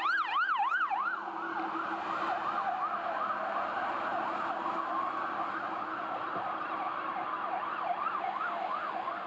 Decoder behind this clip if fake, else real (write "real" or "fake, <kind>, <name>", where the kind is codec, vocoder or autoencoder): real